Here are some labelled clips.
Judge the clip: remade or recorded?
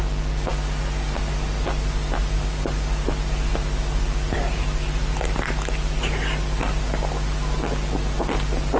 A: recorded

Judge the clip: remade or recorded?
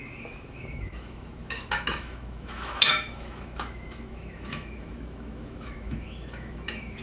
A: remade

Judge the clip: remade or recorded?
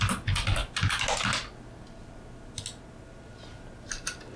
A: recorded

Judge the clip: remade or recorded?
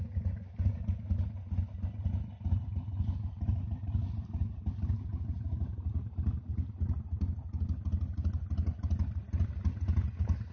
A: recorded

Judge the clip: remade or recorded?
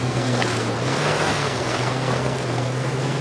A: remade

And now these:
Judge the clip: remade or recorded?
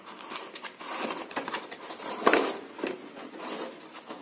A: recorded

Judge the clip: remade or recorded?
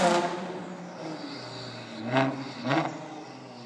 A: recorded